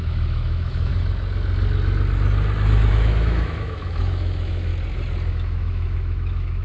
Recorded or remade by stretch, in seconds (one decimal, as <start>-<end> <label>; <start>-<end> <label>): 0.0-0.9 remade; 0.9-2.9 recorded; 2.9-4.7 remade; 4.7-5.3 recorded; 5.3-6.6 remade